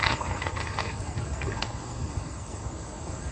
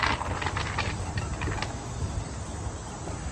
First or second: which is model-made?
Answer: first